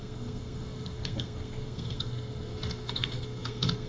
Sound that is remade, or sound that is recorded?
remade